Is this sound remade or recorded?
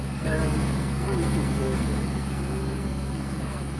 remade